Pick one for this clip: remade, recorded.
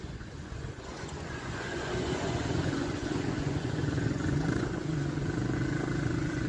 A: remade